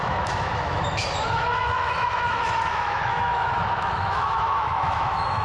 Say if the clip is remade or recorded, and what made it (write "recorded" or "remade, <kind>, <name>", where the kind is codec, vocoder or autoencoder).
remade, autoencoder, DAC-VAE